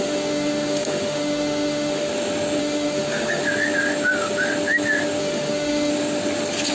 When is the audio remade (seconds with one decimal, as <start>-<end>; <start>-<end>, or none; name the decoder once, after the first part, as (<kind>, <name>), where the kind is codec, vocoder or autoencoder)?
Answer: 0.0-2.1 (autoencoder, DAC-VAE); 2.6-3.4; 5.2-5.9